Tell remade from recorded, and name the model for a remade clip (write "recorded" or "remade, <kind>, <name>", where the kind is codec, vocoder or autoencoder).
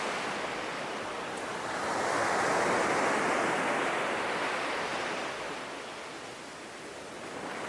recorded